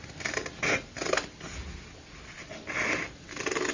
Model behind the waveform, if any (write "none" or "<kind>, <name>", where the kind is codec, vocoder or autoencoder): none